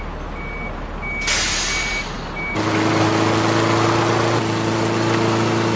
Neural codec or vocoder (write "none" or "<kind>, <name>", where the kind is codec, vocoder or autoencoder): none